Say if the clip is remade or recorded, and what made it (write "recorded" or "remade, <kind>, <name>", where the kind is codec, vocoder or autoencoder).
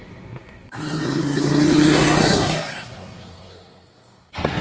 remade, codec, SNAC